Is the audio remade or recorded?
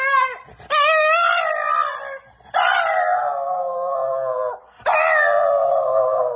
recorded